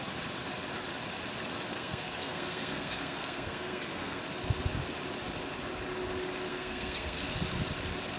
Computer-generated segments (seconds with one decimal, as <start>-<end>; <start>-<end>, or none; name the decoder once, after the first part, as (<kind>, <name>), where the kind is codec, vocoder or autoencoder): 1.7-4.2 (codec, SNAC); 6.5-7.2